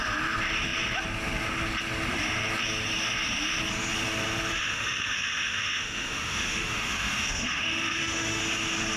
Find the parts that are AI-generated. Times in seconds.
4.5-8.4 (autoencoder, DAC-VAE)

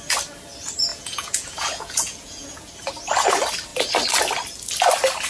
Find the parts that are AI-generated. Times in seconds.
0.9-2.7 (vocoder, Vocos)

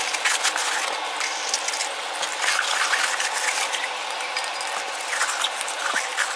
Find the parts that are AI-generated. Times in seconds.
none

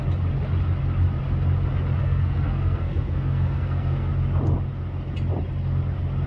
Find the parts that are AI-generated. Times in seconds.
2.0-4.1 (codec, SNAC)

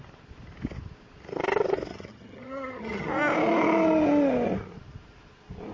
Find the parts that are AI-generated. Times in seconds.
1.9-3.1 (vocoder, HiFi-GAN)

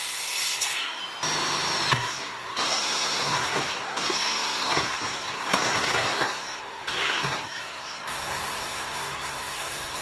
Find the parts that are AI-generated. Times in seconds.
0.0-1.0 (codec, SNAC); 1.9-10.0

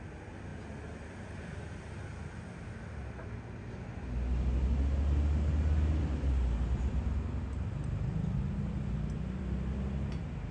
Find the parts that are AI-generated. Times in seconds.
none